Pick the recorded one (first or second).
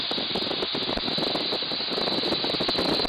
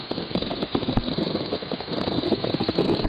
first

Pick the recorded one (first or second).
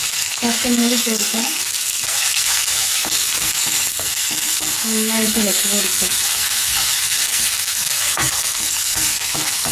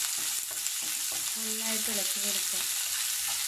second